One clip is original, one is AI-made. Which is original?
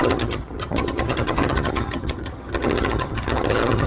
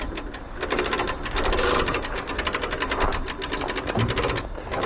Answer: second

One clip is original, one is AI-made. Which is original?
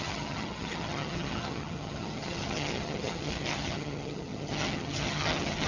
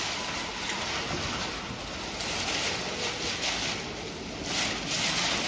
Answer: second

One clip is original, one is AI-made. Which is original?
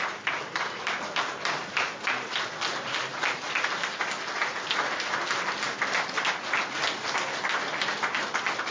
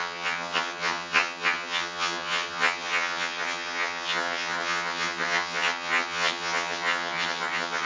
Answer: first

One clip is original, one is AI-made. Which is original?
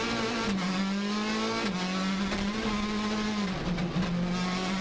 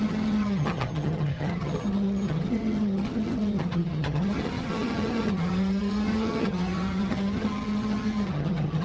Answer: first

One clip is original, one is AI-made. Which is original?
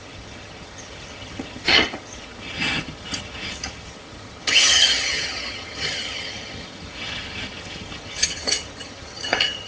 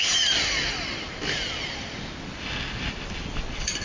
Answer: second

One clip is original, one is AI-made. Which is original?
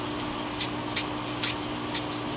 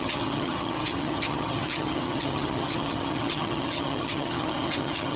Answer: first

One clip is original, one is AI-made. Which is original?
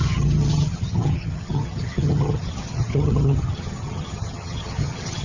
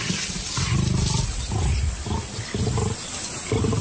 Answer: second